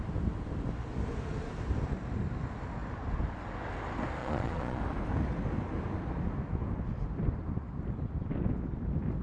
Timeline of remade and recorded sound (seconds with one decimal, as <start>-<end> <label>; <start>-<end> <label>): 0.0-4.2 recorded; 4.2-4.8 remade; 4.8-9.2 recorded